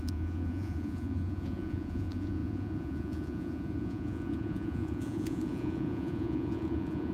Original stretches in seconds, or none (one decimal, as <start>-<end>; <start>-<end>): none